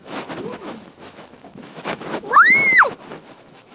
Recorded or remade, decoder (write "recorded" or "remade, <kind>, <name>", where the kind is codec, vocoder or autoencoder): remade, autoencoder, DAC-VAE